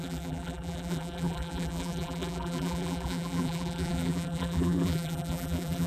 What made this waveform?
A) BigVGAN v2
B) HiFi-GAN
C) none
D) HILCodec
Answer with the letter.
A